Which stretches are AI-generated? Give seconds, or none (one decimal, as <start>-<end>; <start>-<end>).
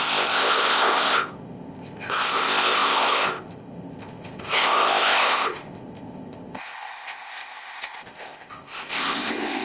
0.0-9.6